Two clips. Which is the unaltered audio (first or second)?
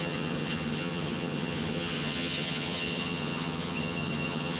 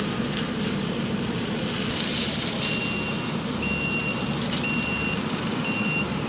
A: second